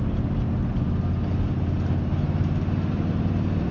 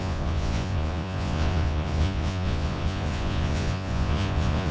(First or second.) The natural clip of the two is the first